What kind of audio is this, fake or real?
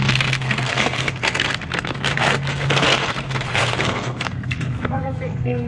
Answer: fake